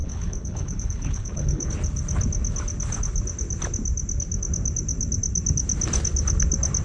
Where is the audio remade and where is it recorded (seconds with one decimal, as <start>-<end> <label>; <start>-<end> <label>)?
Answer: 0.0-1.7 remade; 1.7-6.8 recorded